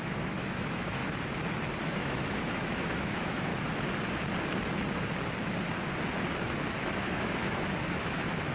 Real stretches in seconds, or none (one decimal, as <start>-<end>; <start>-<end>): 1.0-1.8; 3.5-6.8